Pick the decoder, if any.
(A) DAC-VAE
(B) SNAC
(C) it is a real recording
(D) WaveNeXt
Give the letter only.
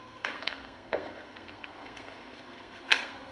B